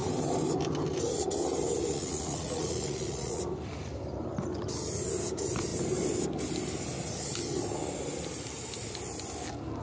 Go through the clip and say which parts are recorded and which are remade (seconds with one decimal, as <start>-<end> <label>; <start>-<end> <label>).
0.0-1.9 recorded; 1.9-3.4 remade; 3.4-9.8 recorded